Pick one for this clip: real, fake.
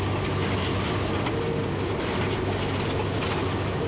real